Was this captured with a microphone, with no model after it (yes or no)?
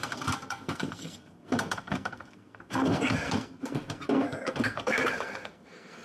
no